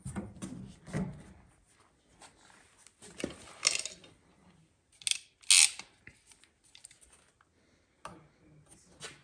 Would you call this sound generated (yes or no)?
no